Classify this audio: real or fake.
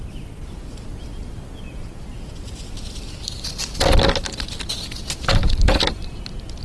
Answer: real